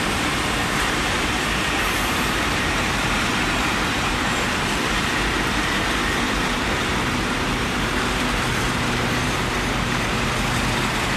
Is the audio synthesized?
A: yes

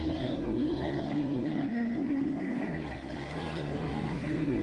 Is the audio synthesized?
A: yes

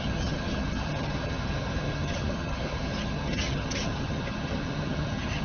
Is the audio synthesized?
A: yes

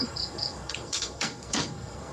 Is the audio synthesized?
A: yes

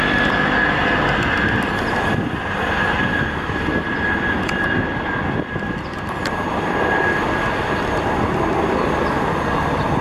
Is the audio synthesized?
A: no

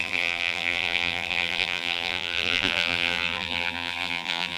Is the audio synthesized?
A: yes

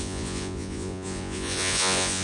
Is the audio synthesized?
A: yes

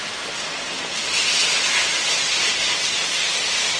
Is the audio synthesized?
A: no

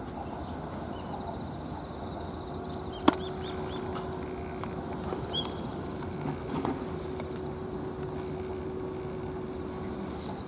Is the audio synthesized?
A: no